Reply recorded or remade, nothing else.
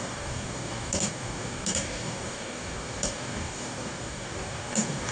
remade